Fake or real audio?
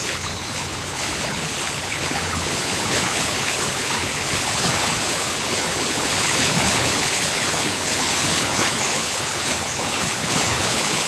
fake